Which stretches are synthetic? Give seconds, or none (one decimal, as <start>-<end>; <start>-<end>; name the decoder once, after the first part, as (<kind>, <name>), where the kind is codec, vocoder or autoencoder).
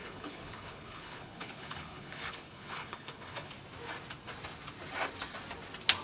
0.0-3.5 (codec, HILCodec)